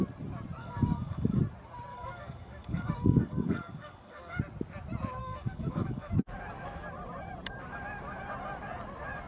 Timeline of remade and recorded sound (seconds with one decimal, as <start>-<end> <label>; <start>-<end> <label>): 0.0-0.6 recorded; 0.6-1.4 remade; 1.4-1.9 recorded; 1.9-4.4 remade; 4.4-5.2 recorded; 5.2-6.1 remade; 6.1-9.3 recorded